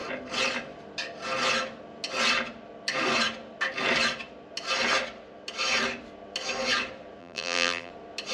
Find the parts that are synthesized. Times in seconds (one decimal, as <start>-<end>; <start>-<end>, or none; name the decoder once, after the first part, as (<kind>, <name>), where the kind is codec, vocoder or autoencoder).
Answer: 7.2-7.9 (vocoder, BigVGAN v2)